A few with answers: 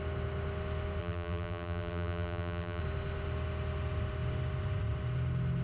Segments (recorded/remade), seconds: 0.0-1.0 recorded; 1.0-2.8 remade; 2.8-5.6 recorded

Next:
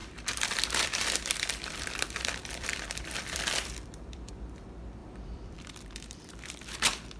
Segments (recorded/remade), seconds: 0.0-4.3 remade; 4.3-5.0 recorded; 5.0-6.6 remade; 6.6-7.2 recorded

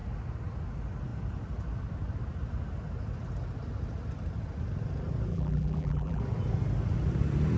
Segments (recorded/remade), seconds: 0.0-5.3 recorded; 5.3-6.2 remade; 6.2-7.6 recorded

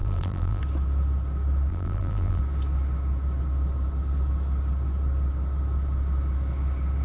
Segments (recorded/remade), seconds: 0.0-0.6 remade; 0.6-1.7 recorded; 1.7-2.4 remade; 2.4-7.0 recorded

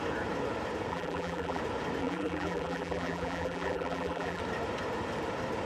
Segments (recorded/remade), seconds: 0.0-0.9 recorded; 0.9-1.6 remade; 1.6-2.0 recorded; 2.0-4.4 remade; 4.4-5.7 recorded

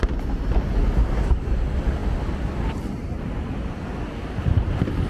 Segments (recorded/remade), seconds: 0.0-5.1 recorded